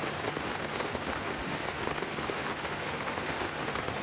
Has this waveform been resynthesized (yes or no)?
yes